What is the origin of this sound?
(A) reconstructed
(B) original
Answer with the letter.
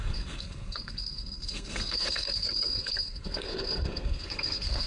A